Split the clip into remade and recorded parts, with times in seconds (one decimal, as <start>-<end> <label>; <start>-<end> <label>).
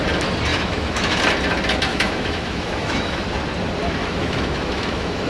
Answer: 0.0-0.5 recorded; 0.5-1.2 remade; 1.2-1.9 recorded; 1.9-3.2 remade; 3.2-4.0 recorded; 4.0-5.3 remade